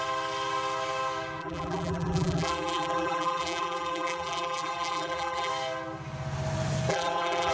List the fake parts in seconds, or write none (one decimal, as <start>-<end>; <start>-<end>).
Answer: 1.4-5.5; 6.9-7.5